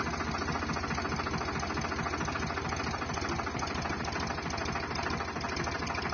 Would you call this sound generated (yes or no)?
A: no